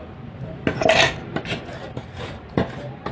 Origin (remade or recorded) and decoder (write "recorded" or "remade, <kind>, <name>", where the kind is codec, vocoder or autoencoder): recorded